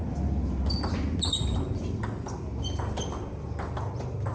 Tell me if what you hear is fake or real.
real